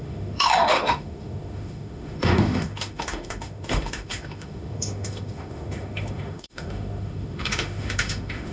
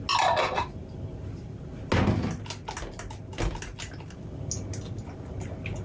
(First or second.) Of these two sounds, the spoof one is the first